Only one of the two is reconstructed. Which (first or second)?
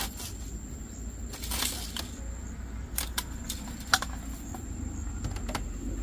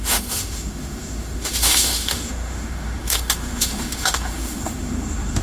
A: second